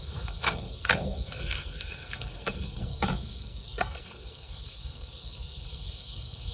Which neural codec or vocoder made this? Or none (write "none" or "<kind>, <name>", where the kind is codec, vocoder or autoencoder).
codec, SNAC